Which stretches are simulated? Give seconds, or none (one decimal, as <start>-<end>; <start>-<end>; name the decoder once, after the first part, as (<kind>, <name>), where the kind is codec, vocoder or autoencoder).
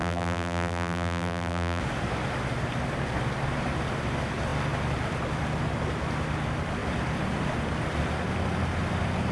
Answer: 0.0-1.8 (vocoder, BigVGAN v2)